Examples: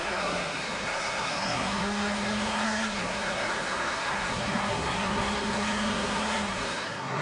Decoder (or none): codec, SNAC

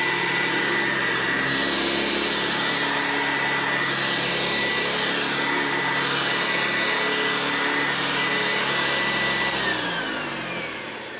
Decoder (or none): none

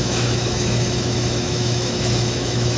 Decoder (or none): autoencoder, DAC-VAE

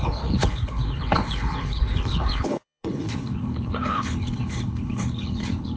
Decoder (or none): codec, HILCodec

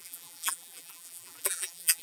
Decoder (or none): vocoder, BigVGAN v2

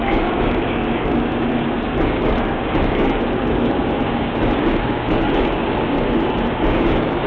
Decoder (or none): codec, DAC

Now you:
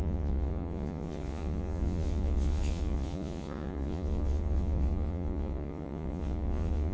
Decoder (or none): vocoder, Vocos